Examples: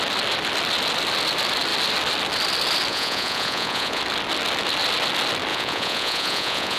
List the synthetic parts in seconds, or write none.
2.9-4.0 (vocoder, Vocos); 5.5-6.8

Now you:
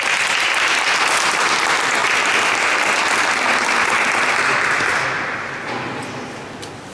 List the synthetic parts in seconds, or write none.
none

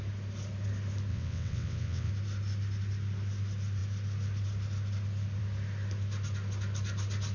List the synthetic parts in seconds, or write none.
1.1-2.1 (vocoder, WaveNeXt)

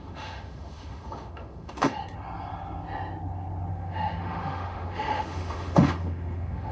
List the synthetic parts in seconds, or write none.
0.0-2.0 (autoencoder, DAC-VAE); 3.7-6.7

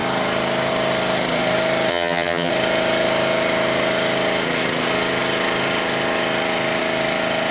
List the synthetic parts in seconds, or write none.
1.9-2.5 (vocoder, HiFi-GAN)

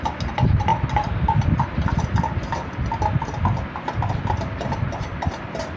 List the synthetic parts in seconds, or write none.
none

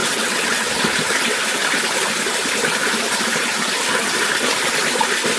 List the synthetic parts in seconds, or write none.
0.0-0.7 (vocoder, WaveNeXt)

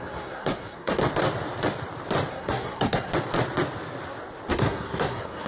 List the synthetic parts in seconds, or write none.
0.0-1.0 (codec, SNAC); 2.3-3.1; 4.5-5.5